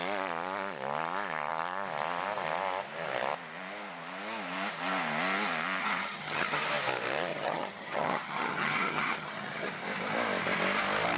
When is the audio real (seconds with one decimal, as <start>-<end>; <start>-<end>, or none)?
0.0-5.8; 6.6-7.3; 9.7-11.2